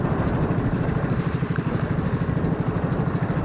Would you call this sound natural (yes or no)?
yes